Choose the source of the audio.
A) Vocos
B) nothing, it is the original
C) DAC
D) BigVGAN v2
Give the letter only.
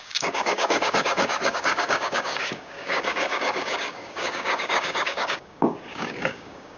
C